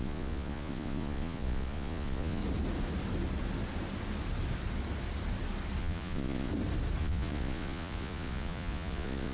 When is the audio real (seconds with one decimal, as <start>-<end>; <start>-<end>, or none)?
2.4-5.8; 6.5-7.0